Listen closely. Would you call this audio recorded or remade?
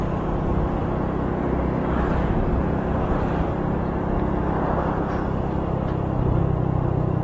recorded